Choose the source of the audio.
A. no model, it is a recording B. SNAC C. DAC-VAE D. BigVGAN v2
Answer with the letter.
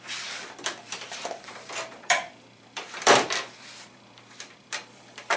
D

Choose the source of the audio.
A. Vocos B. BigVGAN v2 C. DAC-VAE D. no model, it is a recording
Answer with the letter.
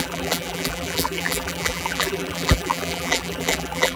B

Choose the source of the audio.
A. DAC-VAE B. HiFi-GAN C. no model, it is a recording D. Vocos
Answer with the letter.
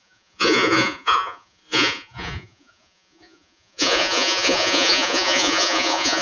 D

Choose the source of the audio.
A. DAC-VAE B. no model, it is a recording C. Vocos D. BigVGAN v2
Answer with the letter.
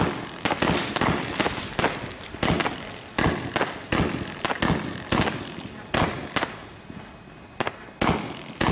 B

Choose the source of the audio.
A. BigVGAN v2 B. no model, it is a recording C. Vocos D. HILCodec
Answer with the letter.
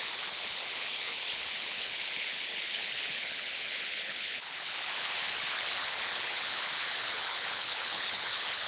D